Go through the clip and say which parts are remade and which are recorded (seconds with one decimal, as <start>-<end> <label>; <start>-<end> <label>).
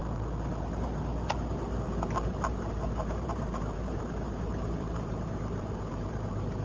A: 0.0-0.5 recorded; 0.5-0.9 remade; 0.9-2.3 recorded; 2.3-6.6 remade